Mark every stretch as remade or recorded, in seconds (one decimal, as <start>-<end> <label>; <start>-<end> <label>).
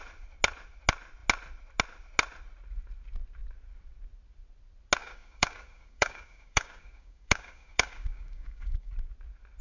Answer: 0.0-5.0 recorded; 5.0-8.9 remade; 8.9-9.6 recorded